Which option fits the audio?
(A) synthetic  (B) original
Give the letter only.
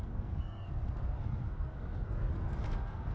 A